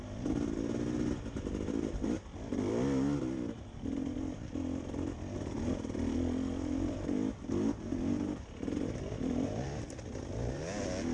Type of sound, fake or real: real